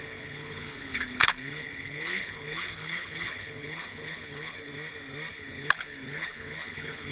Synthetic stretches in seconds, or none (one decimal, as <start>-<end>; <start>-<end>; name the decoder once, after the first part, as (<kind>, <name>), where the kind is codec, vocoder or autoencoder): 0.0-4.7 (codec, HILCodec); 5.3-7.1